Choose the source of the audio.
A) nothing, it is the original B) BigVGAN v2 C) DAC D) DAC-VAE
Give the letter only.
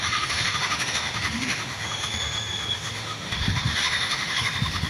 D